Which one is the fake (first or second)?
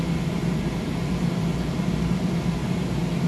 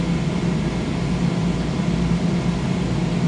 first